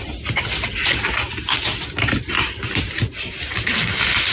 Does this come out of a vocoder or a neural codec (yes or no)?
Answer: no